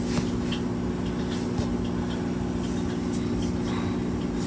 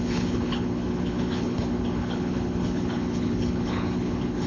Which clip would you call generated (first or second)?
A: second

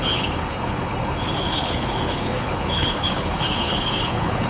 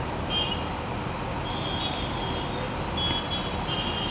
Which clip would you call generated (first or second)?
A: first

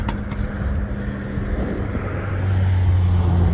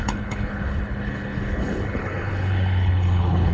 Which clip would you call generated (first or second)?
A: second